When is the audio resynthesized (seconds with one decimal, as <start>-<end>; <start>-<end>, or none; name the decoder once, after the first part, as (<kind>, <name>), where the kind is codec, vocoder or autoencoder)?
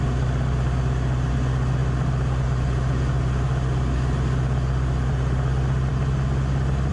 none